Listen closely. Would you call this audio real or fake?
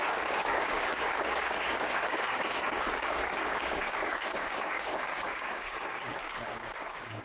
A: fake